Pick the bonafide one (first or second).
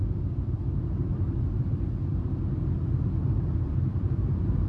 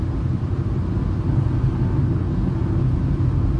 second